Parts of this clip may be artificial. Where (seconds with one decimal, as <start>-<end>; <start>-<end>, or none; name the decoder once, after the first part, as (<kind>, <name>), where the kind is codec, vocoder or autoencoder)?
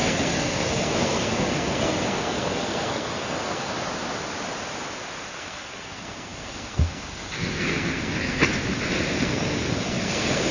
0.0-3.7 (codec, SNAC); 5.3-8.4; 9.2-10.5